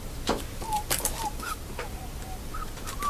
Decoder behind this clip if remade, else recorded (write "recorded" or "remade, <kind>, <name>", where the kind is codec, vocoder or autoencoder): remade, vocoder, BigVGAN v2